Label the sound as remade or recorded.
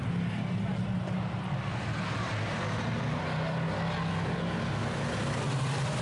recorded